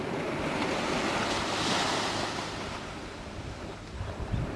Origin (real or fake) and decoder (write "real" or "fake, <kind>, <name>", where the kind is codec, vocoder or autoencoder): real